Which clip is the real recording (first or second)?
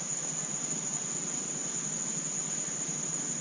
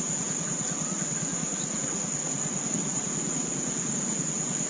first